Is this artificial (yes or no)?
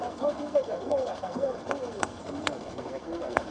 yes